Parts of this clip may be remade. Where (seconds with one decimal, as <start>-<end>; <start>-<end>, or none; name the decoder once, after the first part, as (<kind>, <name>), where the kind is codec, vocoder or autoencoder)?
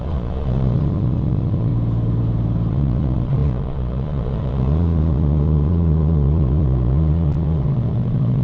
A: 0.0-1.7 (vocoder, Vocos); 2.7-8.4